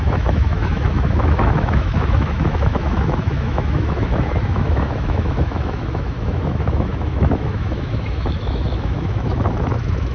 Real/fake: fake